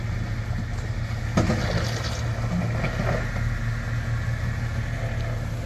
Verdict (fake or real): real